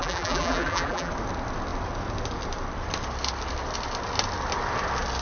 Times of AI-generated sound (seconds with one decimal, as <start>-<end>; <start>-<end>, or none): 0.0-1.1